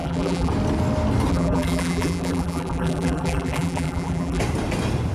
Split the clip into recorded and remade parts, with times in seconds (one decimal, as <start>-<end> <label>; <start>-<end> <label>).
0.0-0.5 remade; 0.5-1.3 recorded; 1.3-4.4 remade; 4.4-5.1 recorded